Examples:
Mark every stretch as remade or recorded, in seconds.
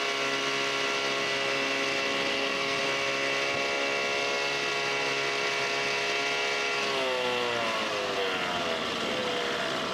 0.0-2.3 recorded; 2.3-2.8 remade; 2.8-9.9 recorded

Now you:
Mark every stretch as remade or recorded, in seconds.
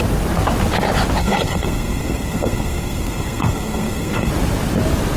0.0-1.2 recorded; 1.2-4.3 remade; 4.3-5.2 recorded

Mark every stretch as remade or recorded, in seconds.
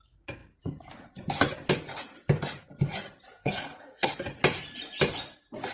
0.0-3.4 recorded; 3.4-4.1 remade; 4.1-5.7 recorded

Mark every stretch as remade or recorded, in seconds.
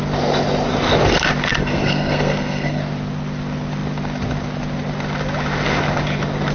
0.0-1.6 recorded; 1.6-2.8 remade; 2.8-6.5 recorded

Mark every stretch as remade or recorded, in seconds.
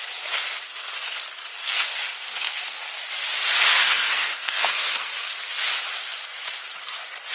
0.0-1.6 recorded; 1.6-2.8 remade; 2.8-3.7 recorded; 3.7-5.5 remade; 5.5-7.3 recorded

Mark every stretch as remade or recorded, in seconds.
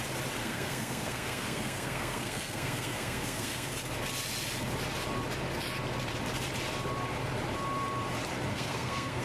0.0-0.4 recorded; 0.4-3.7 remade; 3.7-8.5 recorded; 8.5-9.2 remade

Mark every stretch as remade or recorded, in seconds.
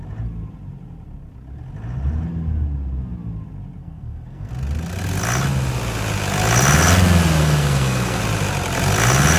0.0-3.8 recorded; 3.8-4.5 remade; 4.5-7.4 recorded; 7.4-8.2 remade; 8.2-9.4 recorded